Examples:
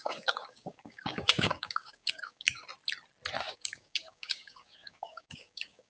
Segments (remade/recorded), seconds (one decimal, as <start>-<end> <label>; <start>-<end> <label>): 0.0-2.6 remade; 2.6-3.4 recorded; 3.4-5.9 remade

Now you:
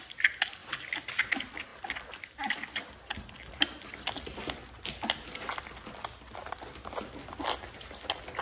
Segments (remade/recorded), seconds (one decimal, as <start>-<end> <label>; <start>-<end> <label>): 0.0-8.4 recorded

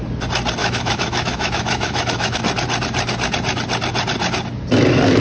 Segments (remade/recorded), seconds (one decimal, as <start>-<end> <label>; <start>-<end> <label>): 0.0-0.6 recorded; 0.6-2.4 remade; 2.4-5.2 recorded

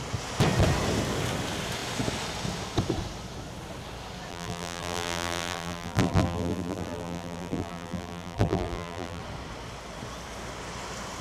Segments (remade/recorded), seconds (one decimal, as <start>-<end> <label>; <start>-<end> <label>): 0.0-4.3 recorded; 4.3-9.2 remade; 9.2-11.2 recorded

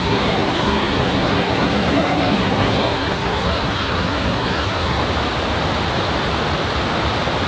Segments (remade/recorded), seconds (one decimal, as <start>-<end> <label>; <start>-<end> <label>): 0.0-5.0 remade; 5.0-7.5 recorded

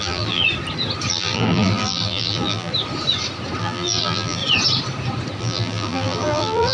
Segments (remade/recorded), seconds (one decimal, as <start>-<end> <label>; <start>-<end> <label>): 0.0-0.4 remade; 0.4-1.1 recorded; 1.1-2.7 remade; 2.7-3.6 recorded; 3.6-4.4 remade; 4.4-5.4 recorded; 5.4-6.7 remade

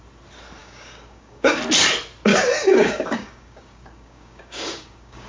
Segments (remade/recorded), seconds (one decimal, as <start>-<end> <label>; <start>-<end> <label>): 0.0-0.6 recorded; 0.6-1.6 remade; 1.6-2.3 recorded; 2.3-5.3 remade